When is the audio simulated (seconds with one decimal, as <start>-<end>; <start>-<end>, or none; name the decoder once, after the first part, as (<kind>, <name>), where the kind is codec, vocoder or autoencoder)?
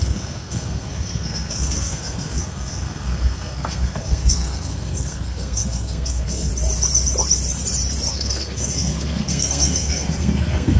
0.0-6.5 (codec, SNAC); 8.1-10.8